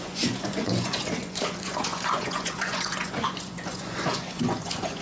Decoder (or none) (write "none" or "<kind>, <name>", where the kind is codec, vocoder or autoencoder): vocoder, Vocos